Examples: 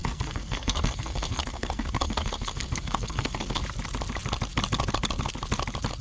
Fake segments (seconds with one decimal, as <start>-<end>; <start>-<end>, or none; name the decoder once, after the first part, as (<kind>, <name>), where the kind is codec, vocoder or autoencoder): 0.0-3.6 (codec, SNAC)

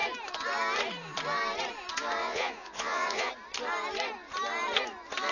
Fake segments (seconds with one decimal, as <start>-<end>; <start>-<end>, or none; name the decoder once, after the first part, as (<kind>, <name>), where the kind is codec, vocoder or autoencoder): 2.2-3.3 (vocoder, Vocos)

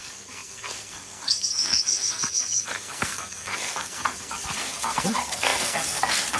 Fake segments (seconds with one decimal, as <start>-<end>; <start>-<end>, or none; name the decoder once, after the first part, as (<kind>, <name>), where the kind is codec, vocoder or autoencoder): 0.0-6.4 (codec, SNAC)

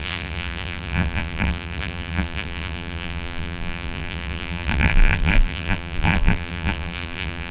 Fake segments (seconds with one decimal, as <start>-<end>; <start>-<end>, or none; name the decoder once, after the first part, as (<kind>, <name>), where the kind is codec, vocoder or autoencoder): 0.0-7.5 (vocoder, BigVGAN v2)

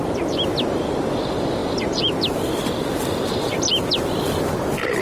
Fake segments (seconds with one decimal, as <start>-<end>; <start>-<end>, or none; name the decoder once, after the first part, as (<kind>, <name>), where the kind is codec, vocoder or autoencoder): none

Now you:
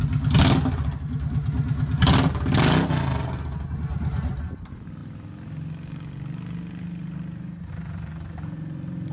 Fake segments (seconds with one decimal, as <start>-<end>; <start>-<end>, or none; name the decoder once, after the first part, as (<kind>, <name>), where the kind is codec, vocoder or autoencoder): none

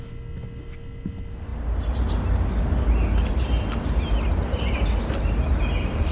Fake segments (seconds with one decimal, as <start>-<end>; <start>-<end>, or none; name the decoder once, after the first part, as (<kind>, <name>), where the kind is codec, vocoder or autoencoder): none

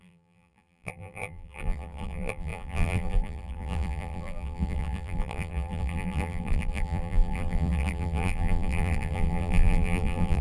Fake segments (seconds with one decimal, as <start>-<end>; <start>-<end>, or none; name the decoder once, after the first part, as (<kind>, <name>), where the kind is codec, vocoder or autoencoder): 0.0-10.4 (vocoder, BigVGAN v2)